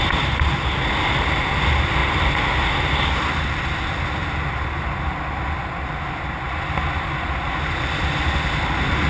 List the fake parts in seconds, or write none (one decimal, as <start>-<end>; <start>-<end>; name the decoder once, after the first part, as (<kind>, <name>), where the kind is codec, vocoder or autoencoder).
2.0-3.3 (vocoder, BigVGAN v2)